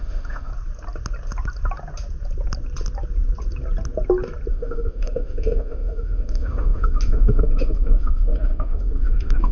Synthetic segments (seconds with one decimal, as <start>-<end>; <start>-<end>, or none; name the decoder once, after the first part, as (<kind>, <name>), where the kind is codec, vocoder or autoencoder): 0.0-0.5 (autoencoder, DAC-VAE); 4.5-9.5